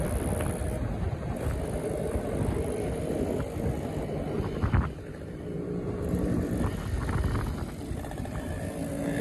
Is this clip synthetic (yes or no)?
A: no